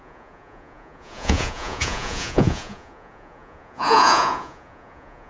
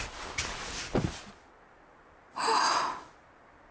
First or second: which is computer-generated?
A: first